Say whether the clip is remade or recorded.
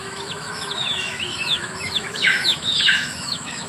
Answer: remade